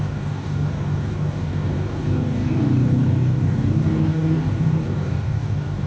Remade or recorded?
remade